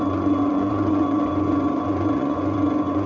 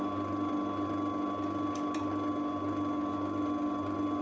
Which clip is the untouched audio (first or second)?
second